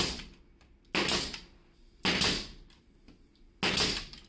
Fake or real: real